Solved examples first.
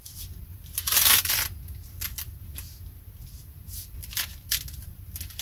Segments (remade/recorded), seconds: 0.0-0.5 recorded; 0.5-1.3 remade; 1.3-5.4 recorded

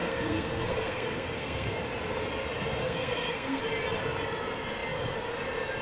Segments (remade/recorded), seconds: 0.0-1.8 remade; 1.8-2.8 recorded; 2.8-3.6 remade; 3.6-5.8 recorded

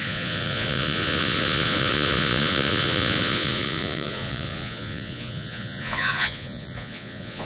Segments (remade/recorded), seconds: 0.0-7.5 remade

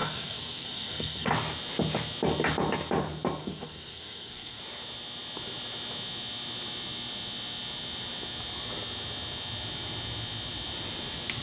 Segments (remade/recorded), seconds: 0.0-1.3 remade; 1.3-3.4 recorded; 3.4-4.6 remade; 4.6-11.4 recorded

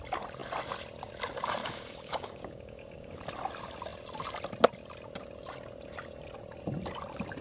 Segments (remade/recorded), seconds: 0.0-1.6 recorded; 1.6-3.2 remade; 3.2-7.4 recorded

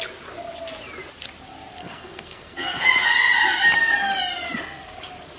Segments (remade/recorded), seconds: 0.0-1.8 recorded; 1.8-2.8 remade; 2.8-5.4 recorded